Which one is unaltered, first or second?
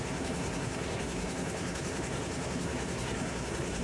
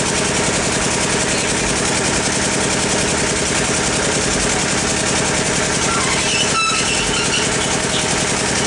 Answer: second